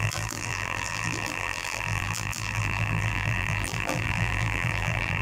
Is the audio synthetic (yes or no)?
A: yes